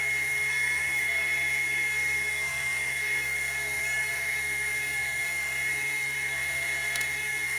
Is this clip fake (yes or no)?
yes